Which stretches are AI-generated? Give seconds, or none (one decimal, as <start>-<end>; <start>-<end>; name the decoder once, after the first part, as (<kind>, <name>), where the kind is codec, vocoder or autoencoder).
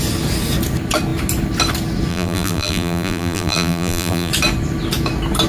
2.1-4.3 (vocoder, BigVGAN v2)